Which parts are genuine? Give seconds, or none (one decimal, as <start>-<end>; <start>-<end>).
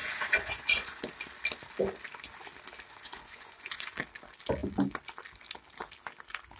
1.0-2.9; 4.0-6.6